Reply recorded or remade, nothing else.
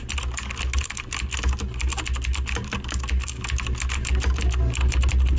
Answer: recorded